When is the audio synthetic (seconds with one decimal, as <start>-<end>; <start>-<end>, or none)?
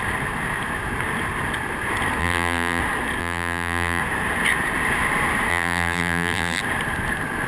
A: 2.2-2.8; 3.2-4.0; 5.5-6.6